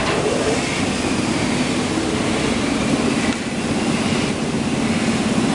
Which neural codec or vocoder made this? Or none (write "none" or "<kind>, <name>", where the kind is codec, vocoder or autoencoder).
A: none